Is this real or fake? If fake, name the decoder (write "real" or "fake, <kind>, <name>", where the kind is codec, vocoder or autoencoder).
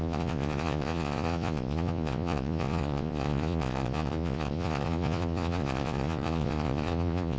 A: fake, vocoder, Vocos